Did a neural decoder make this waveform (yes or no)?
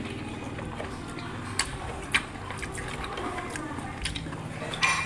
no